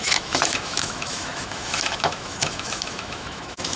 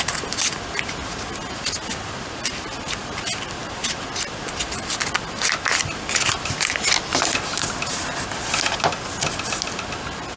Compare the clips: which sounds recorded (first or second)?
second